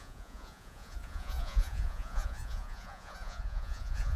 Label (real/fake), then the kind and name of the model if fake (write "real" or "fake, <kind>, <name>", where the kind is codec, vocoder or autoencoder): fake, vocoder, Vocos